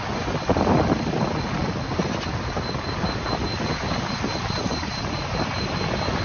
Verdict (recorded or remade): recorded